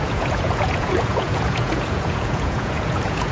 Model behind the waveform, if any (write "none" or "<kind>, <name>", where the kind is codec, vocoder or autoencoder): vocoder, Vocos